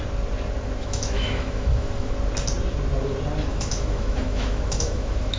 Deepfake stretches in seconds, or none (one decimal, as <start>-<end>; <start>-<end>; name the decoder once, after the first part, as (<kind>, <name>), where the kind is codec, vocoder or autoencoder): 0.8-2.1 (autoencoder, DAC-VAE); 3.5-5.4